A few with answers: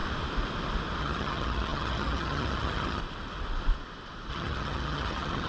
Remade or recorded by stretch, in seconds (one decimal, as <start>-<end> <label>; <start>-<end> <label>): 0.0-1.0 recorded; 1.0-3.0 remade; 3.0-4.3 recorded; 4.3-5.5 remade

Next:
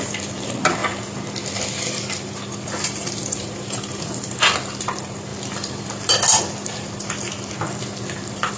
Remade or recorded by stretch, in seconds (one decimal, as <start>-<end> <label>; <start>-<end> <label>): 0.0-8.6 recorded

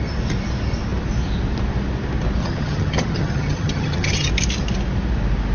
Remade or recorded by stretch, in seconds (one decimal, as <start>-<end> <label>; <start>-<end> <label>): 0.0-2.4 recorded; 2.4-4.3 remade; 4.3-5.5 recorded

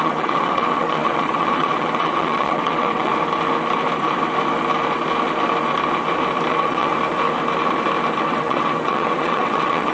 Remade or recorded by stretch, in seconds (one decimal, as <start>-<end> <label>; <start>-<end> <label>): 0.0-3.1 remade; 3.1-6.5 recorded; 6.5-6.9 remade; 6.9-8.2 recorded; 8.2-9.9 remade

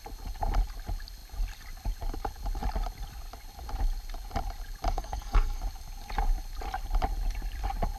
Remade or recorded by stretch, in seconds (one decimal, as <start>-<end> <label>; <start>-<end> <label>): 0.0-4.9 recorded; 4.9-5.6 remade; 5.6-8.0 recorded

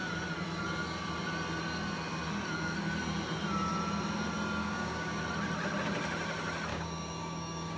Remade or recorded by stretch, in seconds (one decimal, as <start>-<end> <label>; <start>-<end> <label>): 0.0-4.6 recorded; 4.6-5.2 remade; 5.2-6.7 recorded; 6.7-7.8 remade

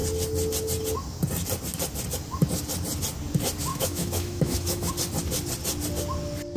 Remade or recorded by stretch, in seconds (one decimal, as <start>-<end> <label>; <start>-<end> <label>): 0.0-3.7 recorded; 3.7-4.9 remade; 4.9-6.6 recorded